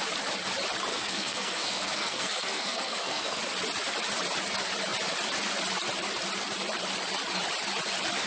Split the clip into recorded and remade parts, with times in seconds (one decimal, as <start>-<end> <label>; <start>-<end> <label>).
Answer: 0.0-0.9 recorded; 0.9-3.4 remade; 3.4-8.3 recorded